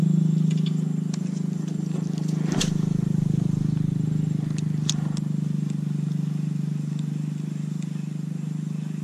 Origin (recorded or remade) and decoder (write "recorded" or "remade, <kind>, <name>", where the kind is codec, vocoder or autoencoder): recorded